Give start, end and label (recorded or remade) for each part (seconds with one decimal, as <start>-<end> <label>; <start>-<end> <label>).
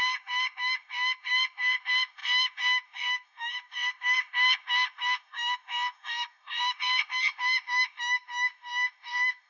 0.0-9.5 remade